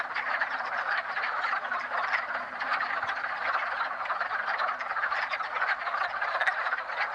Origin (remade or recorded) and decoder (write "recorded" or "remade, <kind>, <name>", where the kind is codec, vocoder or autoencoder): recorded